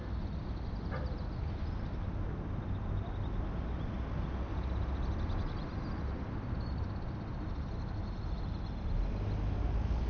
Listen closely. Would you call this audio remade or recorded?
recorded